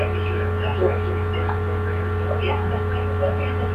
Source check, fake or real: real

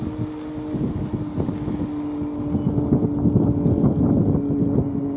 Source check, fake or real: real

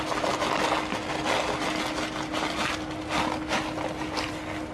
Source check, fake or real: real